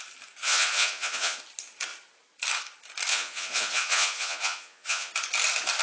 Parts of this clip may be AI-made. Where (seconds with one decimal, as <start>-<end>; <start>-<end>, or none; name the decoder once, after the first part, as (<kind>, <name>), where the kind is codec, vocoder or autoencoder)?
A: 0.4-1.4 (vocoder, Vocos); 3.1-5.1